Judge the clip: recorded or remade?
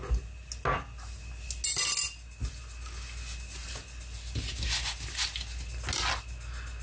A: recorded